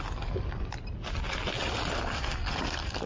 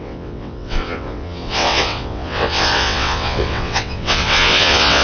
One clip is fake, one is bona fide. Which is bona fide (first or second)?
first